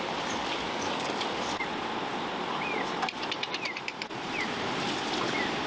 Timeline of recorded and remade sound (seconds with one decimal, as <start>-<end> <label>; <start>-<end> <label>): 0.0-0.4 recorded; 0.4-1.5 remade; 1.5-5.7 recorded